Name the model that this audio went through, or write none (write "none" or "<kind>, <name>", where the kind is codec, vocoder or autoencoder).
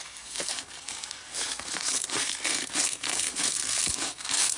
codec, SNAC